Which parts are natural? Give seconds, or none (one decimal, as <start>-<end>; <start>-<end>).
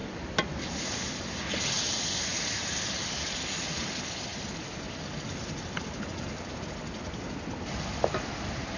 0.7-8.8